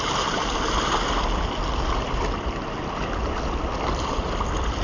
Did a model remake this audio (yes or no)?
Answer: no